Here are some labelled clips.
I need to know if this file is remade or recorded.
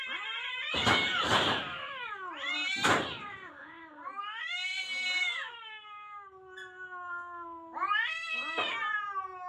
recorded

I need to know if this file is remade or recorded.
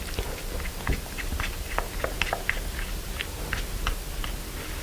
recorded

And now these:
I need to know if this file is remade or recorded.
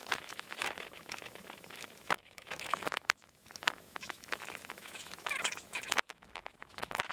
remade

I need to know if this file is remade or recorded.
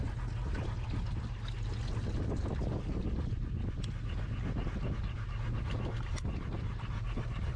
recorded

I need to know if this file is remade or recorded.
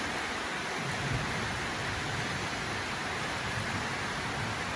recorded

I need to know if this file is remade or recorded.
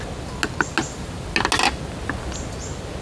recorded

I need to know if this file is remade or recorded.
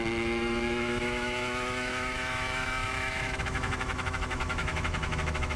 remade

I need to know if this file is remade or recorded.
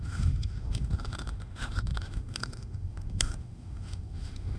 remade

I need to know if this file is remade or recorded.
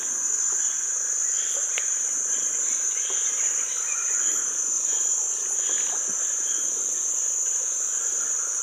recorded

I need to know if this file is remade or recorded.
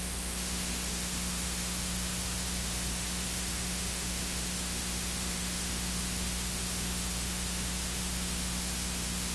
remade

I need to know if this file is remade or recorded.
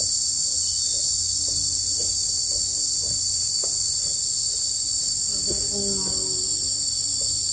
recorded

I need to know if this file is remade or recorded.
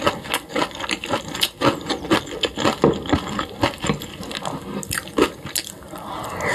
recorded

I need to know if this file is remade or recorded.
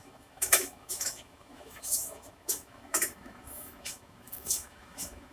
remade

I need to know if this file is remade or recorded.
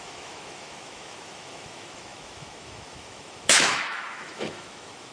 remade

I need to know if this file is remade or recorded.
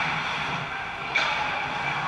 recorded